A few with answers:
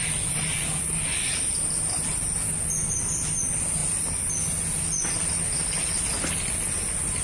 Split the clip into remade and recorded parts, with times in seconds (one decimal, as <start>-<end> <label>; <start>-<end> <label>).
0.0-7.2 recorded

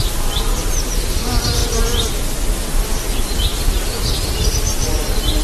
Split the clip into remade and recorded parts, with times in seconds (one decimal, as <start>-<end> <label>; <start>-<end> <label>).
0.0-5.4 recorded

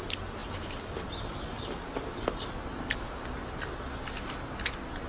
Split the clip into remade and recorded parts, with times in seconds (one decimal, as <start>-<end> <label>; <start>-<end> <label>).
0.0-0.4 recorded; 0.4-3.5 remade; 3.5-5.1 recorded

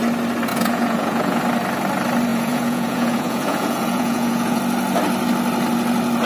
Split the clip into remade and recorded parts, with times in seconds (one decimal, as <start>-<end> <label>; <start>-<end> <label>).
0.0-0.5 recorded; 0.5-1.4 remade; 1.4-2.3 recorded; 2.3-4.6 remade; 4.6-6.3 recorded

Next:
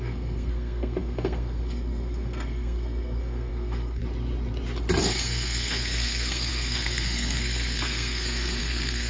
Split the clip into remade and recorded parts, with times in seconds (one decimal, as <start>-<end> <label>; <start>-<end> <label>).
0.0-4.0 remade; 4.0-5.0 recorded; 5.0-9.1 remade

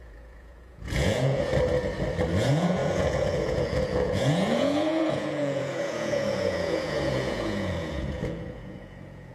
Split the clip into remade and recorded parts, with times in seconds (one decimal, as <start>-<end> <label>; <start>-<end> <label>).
0.0-1.5 remade; 1.5-2.4 recorded; 2.4-9.3 remade

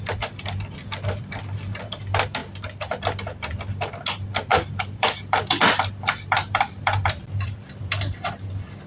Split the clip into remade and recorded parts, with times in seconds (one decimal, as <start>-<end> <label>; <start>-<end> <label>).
0.0-2.4 recorded; 2.4-2.9 remade; 2.9-4.5 recorded; 4.5-8.5 remade; 8.5-8.9 recorded